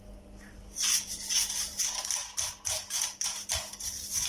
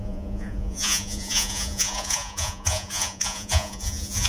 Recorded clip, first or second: first